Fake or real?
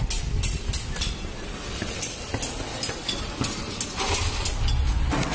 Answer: real